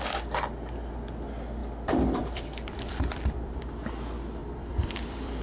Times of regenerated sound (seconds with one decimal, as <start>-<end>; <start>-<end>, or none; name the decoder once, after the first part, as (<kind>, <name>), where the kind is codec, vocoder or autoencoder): 1.6-3.6 (vocoder, BigVGAN v2); 4.4-5.4